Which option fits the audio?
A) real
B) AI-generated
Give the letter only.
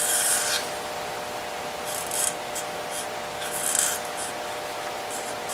A